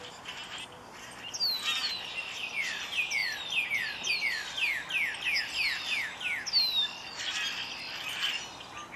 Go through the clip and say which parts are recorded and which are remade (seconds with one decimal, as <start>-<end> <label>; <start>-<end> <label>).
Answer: 0.0-9.0 recorded